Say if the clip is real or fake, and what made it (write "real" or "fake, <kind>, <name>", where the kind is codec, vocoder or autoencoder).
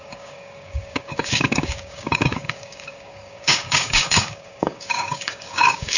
fake, codec, DAC